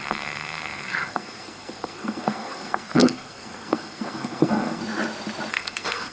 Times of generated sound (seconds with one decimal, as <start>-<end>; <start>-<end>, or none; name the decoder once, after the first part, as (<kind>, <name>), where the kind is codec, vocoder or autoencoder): 0.0-4.8 (codec, SNAC); 5.5-6.1